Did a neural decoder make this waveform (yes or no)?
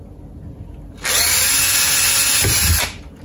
no